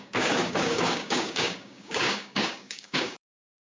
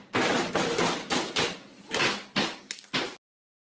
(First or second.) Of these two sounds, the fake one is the first